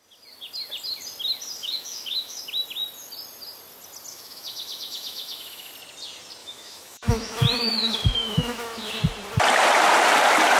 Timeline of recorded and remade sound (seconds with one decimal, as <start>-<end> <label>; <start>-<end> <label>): 0.0-1.6 recorded; 1.6-2.4 remade; 2.4-4.1 recorded; 4.1-5.7 remade; 5.7-6.4 recorded; 6.4-9.0 remade; 9.0-10.6 recorded